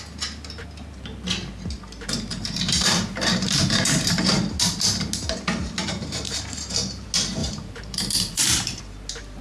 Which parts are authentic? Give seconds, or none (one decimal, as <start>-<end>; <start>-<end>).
0.0-2.3; 4.4-5.8; 6.4-7.4; 8.8-9.4